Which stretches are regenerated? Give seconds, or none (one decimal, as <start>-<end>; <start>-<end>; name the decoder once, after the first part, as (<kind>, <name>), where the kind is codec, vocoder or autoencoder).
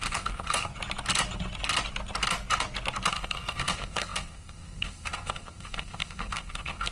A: 0.0-0.7 (codec, SNAC); 3.1-6.9